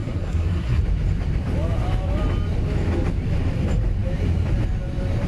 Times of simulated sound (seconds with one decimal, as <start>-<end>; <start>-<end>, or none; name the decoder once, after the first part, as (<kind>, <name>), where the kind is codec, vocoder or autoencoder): 0.0-0.8 (codec, SNAC)